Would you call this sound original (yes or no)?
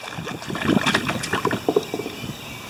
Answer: yes